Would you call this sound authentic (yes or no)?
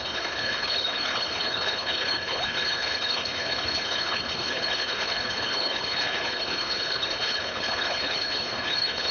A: no